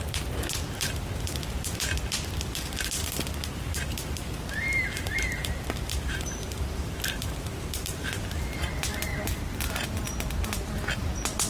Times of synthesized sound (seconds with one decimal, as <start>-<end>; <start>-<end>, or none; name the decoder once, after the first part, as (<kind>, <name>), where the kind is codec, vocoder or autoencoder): 4.2-8.1 (vocoder, BigVGAN v2)